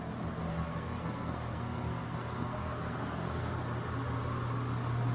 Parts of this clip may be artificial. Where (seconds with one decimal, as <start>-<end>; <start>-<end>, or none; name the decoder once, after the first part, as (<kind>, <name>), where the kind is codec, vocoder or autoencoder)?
0.5-3.6 (codec, SNAC)